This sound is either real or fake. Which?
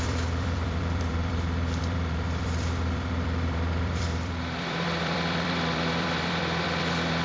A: fake